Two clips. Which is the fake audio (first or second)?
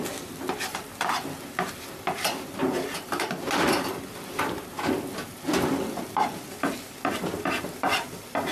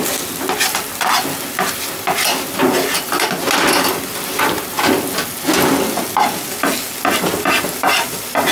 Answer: first